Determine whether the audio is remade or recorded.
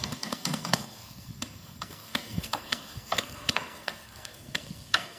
remade